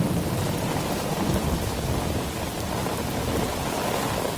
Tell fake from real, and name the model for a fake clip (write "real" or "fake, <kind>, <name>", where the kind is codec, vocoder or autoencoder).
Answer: real